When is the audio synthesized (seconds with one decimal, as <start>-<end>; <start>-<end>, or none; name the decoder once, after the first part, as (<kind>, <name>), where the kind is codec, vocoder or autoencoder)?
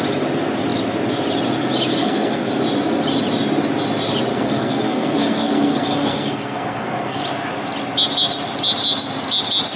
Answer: 2.0-2.5 (codec, SNAC); 4.3-7.2